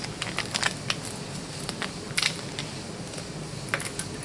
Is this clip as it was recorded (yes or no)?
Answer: yes